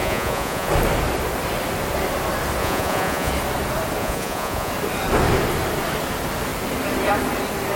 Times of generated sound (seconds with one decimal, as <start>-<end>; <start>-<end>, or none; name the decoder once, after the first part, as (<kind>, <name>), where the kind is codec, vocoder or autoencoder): 0.0-0.7 (vocoder, Vocos); 2.6-3.3; 4.0-4.7